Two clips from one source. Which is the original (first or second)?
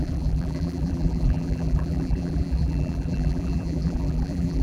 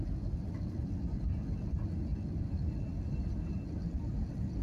second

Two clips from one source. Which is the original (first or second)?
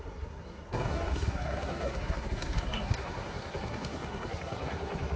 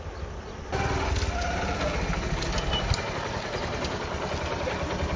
second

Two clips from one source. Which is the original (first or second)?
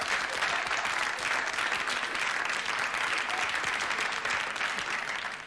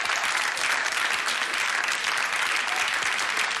first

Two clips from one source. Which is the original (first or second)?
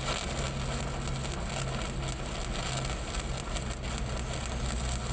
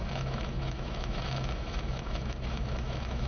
first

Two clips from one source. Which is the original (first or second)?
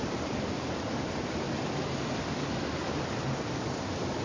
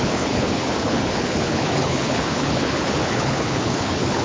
first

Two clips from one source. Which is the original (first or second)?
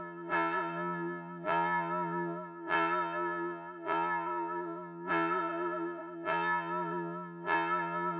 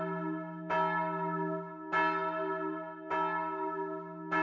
second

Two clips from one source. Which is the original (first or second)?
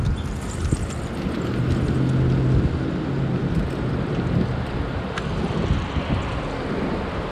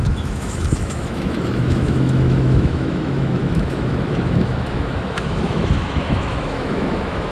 first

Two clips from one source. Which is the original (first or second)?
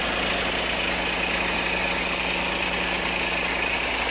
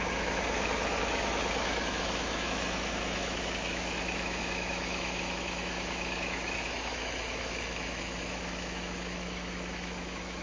first